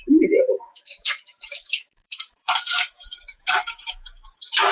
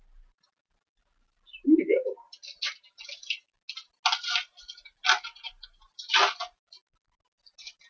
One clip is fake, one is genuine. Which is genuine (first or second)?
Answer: second